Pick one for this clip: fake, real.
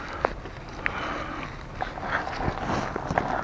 real